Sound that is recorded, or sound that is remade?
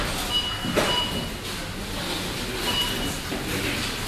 recorded